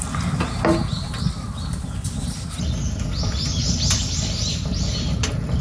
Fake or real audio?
real